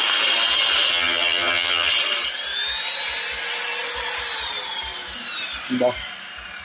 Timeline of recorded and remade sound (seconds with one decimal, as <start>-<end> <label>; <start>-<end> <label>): 0.0-0.9 recorded; 0.9-1.9 remade; 1.9-6.6 recorded

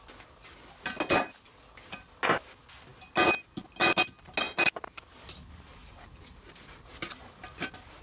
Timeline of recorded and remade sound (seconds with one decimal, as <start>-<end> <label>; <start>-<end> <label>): 0.0-8.0 recorded

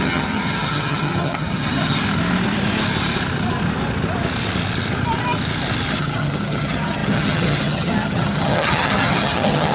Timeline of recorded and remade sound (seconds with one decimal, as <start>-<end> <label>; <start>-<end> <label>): 0.0-2.0 remade; 2.0-5.9 recorded; 5.9-9.7 remade

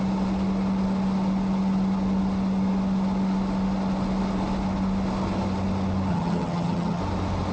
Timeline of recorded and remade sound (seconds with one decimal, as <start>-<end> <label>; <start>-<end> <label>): 0.0-6.1 recorded; 6.1-7.0 remade; 7.0-7.5 recorded

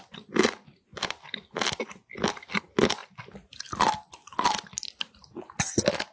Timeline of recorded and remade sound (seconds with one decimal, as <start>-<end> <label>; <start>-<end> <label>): 0.0-6.1 recorded

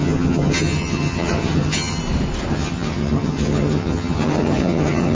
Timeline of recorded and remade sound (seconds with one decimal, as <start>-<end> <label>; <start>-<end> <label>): 0.0-2.0 remade; 2.0-2.5 recorded; 2.5-5.1 remade

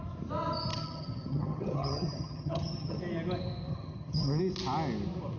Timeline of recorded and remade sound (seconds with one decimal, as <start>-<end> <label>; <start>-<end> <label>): 0.0-0.7 recorded; 0.7-3.0 remade; 3.0-3.7 recorded; 3.7-4.4 remade; 4.4-5.4 recorded

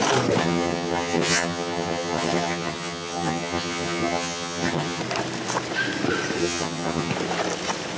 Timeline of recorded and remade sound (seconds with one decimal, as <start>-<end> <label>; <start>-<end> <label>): 0.0-0.4 recorded; 0.4-5.0 remade; 5.0-6.4 recorded; 6.4-7.1 remade; 7.1-8.0 recorded